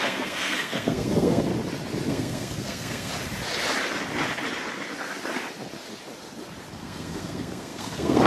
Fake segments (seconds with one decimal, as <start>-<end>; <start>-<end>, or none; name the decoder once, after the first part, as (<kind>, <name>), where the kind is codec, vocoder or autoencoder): 0.0-1.5 (codec, SNAC); 2.1-3.1; 6.7-8.3